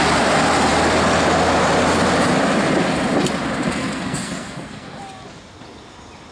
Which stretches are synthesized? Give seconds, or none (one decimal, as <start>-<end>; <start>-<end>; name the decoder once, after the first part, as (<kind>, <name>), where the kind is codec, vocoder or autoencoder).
3.8-5.0 (codec, SNAC)